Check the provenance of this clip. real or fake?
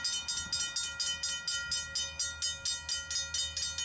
real